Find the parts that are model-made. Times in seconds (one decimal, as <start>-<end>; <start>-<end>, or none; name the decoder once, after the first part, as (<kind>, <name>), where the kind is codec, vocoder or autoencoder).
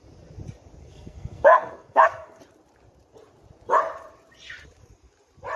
0.8-2.4 (codec, SNAC)